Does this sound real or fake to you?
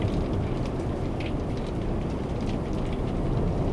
real